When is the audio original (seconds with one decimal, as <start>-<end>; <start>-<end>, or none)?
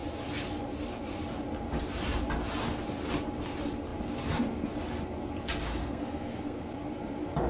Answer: 0.0-5.8; 6.7-7.5